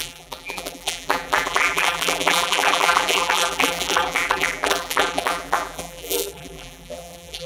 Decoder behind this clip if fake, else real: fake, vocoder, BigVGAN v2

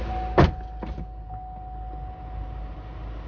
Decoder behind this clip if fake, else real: real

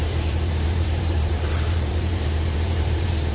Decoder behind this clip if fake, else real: fake, vocoder, BigVGAN v2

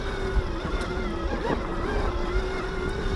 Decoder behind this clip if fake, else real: real